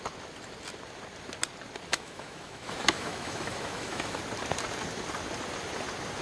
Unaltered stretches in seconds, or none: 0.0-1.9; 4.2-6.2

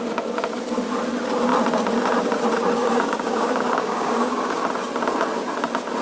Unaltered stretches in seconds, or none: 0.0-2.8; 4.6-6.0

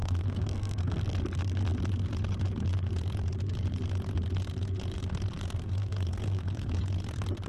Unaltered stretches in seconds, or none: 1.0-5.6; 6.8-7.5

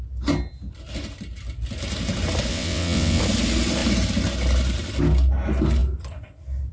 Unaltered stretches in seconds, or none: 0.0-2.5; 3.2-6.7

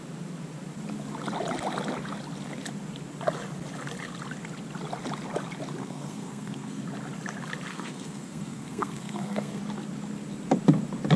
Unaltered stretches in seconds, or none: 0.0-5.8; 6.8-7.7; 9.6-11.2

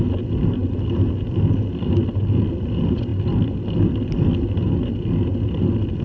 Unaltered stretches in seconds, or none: 0.0-6.0

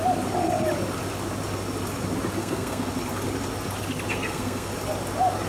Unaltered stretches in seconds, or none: 0.0-2.4; 2.9-4.1; 4.7-5.5